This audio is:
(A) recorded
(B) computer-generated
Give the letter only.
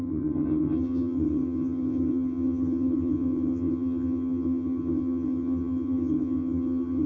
B